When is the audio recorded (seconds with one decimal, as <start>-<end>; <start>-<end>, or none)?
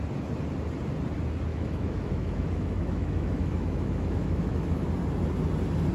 0.0-1.5; 4.9-5.9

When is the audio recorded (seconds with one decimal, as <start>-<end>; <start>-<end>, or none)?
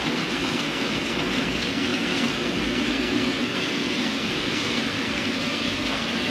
none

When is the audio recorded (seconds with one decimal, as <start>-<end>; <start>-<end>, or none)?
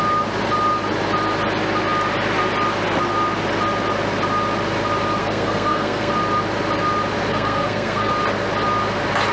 0.0-5.2; 6.1-7.3; 8.1-9.3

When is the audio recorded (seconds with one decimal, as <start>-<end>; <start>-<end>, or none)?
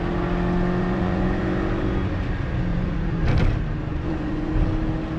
0.0-0.8; 1.4-2.7; 3.3-3.9; 4.5-5.2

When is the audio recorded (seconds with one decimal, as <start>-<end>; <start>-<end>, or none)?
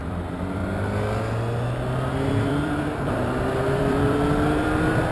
0.6-2.2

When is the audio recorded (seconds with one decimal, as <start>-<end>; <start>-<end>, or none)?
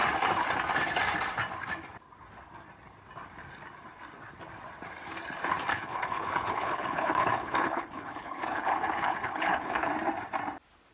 0.0-5.7; 9.9-10.9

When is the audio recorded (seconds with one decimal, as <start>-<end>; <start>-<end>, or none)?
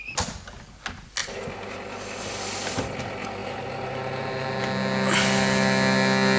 0.0-3.4; 4.6-6.4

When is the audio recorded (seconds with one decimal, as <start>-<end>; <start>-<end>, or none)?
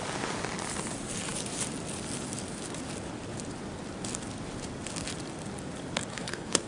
0.0-6.1